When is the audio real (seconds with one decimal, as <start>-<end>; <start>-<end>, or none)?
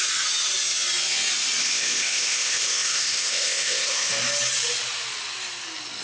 0.0-1.6; 4.1-6.0